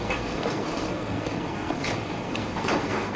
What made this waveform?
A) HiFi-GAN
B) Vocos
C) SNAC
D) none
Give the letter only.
C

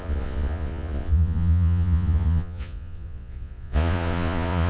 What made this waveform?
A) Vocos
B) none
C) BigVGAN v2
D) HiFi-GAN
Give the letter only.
A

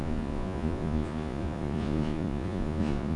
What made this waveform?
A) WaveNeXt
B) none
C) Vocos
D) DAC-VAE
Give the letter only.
C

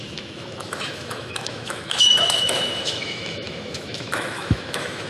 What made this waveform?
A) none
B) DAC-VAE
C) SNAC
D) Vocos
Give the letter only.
B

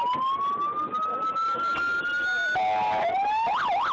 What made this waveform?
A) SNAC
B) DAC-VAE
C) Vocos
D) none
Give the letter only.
D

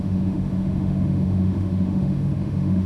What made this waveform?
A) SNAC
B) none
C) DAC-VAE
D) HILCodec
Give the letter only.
C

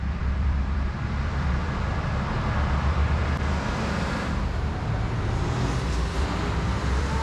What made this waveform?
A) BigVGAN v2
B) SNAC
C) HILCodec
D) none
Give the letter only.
A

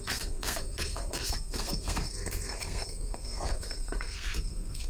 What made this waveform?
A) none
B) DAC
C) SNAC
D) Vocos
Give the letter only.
C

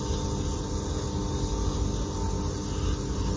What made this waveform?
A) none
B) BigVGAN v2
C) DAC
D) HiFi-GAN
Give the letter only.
A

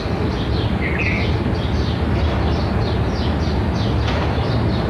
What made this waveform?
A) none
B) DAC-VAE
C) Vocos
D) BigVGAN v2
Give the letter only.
A